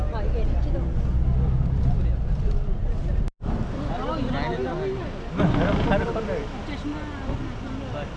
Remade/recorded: recorded